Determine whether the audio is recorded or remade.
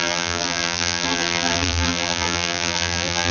remade